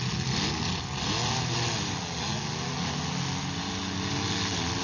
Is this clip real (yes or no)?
yes